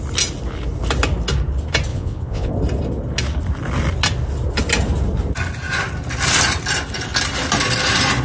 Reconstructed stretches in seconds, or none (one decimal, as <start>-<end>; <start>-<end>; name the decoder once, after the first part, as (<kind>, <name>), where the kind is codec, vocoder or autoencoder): 1.9-2.5 (vocoder, Vocos)